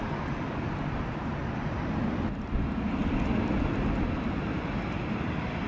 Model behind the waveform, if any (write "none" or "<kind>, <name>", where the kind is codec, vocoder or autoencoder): none